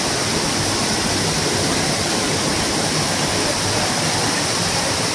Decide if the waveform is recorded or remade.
recorded